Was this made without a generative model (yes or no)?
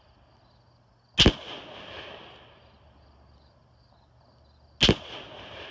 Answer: yes